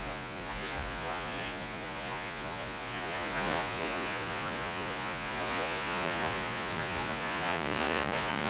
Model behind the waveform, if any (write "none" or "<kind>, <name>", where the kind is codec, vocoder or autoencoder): vocoder, Vocos